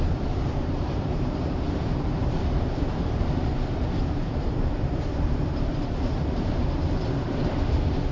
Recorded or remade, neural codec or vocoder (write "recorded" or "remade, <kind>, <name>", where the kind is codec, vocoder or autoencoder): remade, vocoder, BigVGAN v2